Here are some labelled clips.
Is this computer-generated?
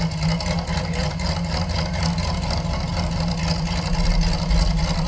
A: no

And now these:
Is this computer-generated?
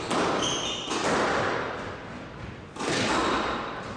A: no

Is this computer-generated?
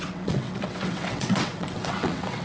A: yes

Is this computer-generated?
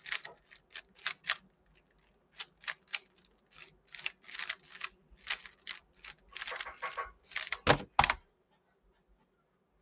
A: no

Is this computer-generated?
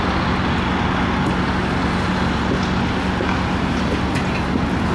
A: no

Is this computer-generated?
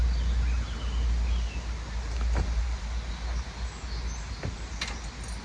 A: no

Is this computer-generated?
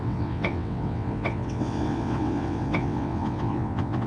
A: yes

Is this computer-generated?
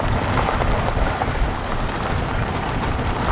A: no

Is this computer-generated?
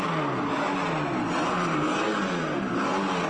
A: no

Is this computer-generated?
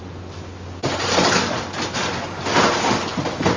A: no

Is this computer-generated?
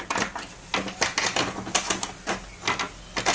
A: no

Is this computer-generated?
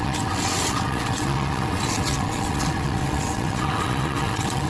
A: yes